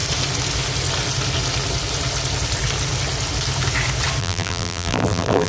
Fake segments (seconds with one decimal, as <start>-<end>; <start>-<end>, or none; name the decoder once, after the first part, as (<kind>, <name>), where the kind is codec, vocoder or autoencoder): 4.2-5.5 (vocoder, BigVGAN v2)